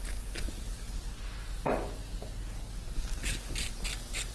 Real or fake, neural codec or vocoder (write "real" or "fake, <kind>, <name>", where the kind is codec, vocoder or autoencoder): real